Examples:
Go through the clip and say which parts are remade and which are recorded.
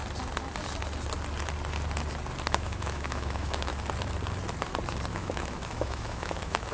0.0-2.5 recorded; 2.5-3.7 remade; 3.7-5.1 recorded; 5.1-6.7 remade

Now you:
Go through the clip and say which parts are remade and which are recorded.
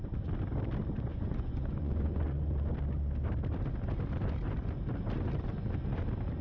0.0-1.1 recorded; 1.1-2.5 remade; 2.5-6.4 recorded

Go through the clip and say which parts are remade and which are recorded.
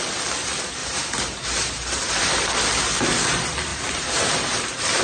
0.0-0.8 recorded; 0.8-2.5 remade; 2.5-3.7 recorded; 3.7-5.0 remade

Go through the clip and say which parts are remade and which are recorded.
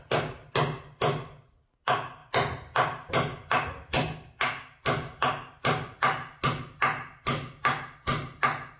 0.0-8.8 recorded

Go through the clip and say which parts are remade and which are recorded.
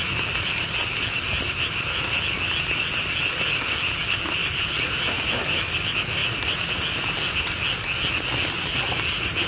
0.0-4.4 recorded; 4.4-5.3 remade; 5.3-6.2 recorded; 6.2-6.7 remade; 6.7-9.5 recorded